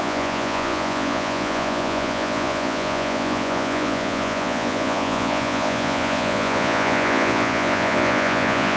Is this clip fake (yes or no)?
yes